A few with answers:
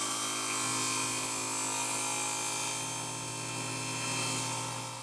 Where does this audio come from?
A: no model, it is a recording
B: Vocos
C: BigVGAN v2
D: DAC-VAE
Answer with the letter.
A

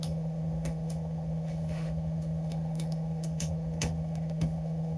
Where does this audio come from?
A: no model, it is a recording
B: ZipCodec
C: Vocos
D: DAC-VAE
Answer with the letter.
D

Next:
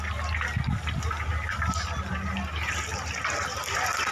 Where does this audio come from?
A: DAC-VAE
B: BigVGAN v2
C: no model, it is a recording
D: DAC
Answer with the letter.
C